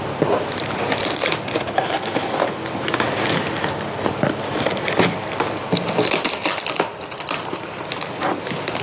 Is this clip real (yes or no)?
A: yes